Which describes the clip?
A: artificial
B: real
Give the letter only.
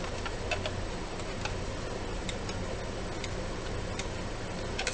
B